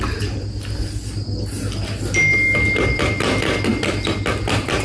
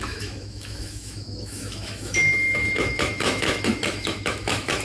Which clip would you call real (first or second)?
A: first